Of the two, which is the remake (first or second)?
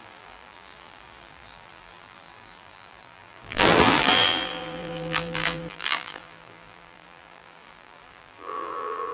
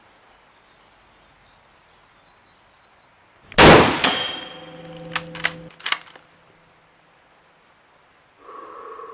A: first